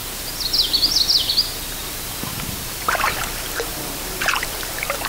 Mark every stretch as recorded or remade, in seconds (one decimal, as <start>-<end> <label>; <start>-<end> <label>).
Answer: 0.0-1.8 recorded; 1.8-5.1 remade